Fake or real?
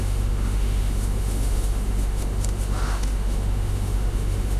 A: fake